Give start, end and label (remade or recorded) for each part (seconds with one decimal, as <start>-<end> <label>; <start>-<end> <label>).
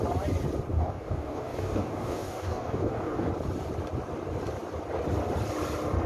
0.0-0.7 recorded; 0.7-3.3 remade; 3.3-6.1 recorded